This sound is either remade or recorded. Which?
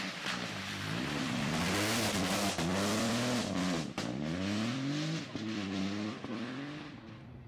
remade